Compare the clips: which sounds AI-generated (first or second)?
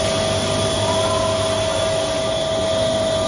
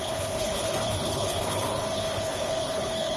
second